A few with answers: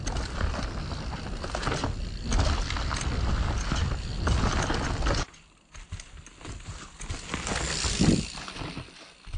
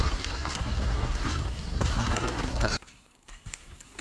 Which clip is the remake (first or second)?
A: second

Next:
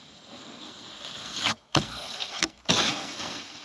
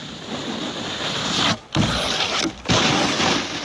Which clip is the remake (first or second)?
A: first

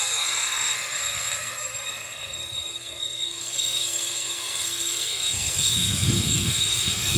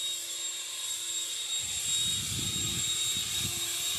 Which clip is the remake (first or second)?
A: first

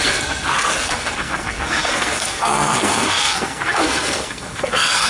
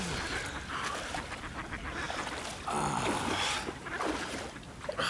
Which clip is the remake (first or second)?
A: first